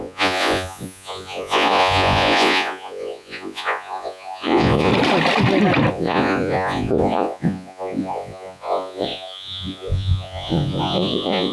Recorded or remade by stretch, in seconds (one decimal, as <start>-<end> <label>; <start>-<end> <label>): 0.0-4.9 remade; 4.9-5.9 recorded; 5.9-11.5 remade